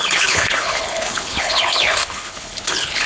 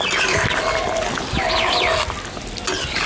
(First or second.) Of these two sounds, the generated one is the first